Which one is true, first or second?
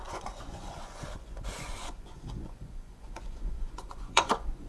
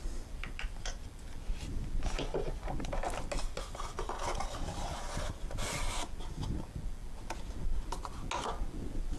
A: second